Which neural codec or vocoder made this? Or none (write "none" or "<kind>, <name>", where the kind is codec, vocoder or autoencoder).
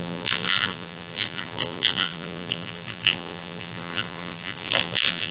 vocoder, BigVGAN v2